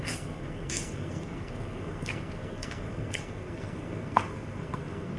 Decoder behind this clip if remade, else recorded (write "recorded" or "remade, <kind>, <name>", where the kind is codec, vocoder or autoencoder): remade, codec, SNAC